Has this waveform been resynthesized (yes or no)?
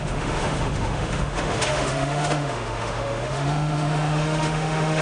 yes